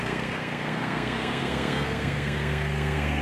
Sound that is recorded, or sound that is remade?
remade